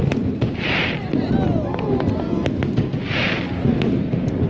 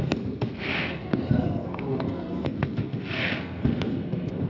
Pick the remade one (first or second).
second